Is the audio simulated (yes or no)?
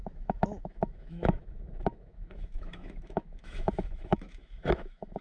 yes